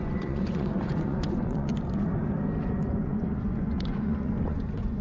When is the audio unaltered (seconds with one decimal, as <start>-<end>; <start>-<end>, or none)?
1.7-2.6